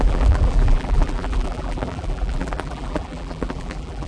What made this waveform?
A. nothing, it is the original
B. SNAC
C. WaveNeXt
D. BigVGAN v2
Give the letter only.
D